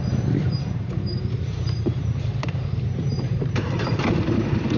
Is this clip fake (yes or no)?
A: yes